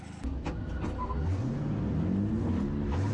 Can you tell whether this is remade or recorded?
recorded